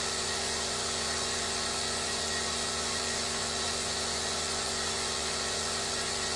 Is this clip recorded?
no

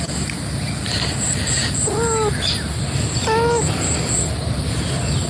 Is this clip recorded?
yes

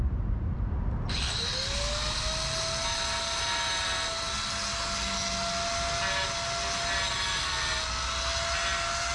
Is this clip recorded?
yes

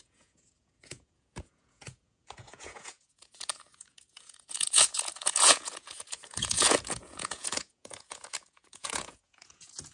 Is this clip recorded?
no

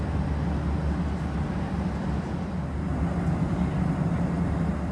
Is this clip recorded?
yes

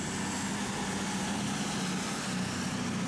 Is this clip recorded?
yes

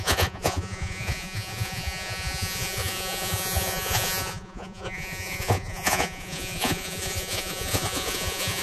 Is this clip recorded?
no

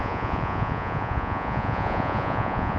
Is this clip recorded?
no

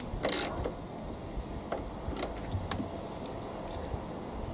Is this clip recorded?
yes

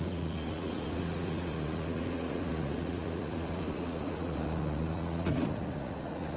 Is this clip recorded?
no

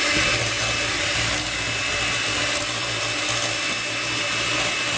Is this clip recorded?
yes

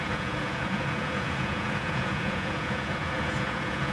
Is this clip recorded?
no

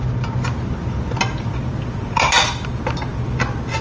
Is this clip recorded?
yes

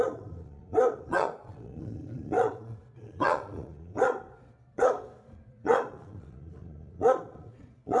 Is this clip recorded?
no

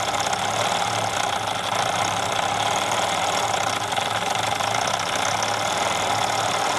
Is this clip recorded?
yes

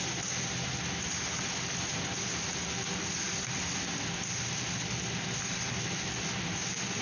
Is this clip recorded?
yes